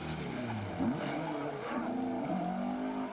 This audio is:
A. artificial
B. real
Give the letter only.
B